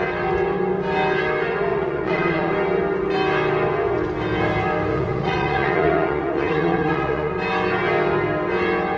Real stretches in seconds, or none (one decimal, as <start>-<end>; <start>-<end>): 0.0-1.7; 2.5-4.9; 7.3-9.0

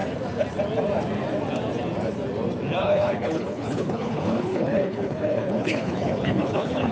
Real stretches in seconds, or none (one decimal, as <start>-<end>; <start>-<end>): 0.0-2.8